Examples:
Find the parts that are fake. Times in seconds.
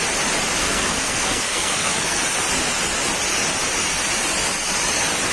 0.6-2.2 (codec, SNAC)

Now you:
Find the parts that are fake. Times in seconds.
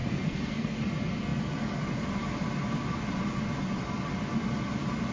0.0-0.8 (codec, SNAC)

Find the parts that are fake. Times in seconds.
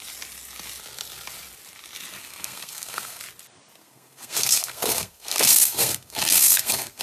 2.2-3.2 (codec, SNAC); 3.8-7.0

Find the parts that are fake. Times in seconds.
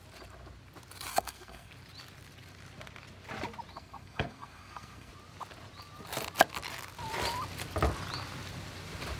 1.1-1.7 (codec, SNAC); 3.7-5.1